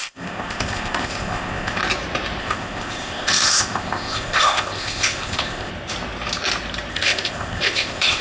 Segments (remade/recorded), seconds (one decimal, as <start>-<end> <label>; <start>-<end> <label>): 0.0-1.8 remade; 1.8-2.4 recorded; 2.4-5.7 remade; 5.7-6.9 recorded; 6.9-8.2 remade